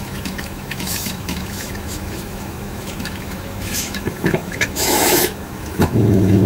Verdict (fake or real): fake